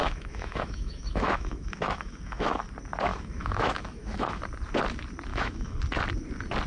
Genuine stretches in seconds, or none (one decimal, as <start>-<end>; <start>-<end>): 2.6-3.1; 4.4-5.3; 5.8-6.7